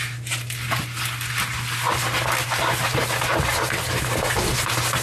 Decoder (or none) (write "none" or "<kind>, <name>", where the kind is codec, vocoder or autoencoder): none